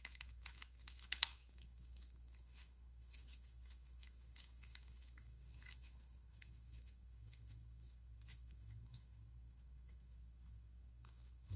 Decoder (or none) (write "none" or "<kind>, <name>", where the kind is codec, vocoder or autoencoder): autoencoder, DAC-VAE